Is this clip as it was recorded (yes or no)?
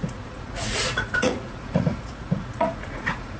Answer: no